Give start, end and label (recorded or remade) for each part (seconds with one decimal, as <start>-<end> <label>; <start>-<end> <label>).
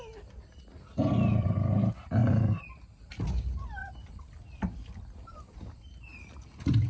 0.0-3.8 recorded; 3.8-5.6 remade; 5.6-6.1 recorded; 6.1-6.9 remade